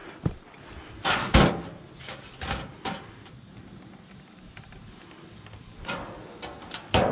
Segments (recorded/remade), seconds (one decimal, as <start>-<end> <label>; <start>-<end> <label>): 0.0-7.1 recorded